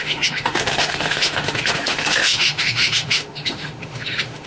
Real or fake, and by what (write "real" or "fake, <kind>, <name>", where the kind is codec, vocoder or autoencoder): fake, autoencoder, DAC-VAE